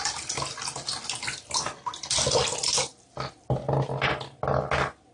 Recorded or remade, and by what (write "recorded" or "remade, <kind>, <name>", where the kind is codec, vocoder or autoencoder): recorded